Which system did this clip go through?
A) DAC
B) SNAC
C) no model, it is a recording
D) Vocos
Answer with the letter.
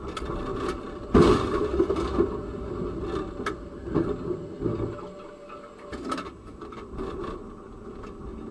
C